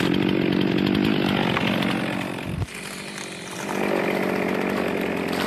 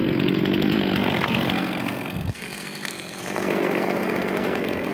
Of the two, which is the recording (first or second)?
first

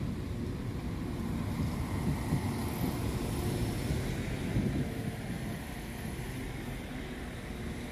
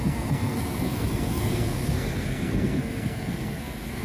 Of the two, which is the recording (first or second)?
first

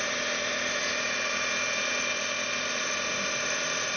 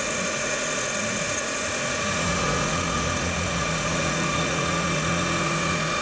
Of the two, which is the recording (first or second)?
first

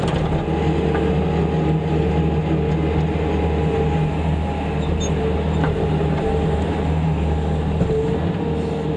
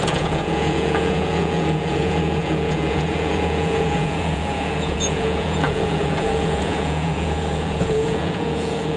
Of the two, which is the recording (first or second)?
first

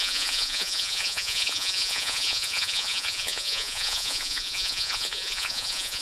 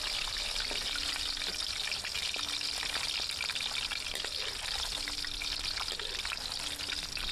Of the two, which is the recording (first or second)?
second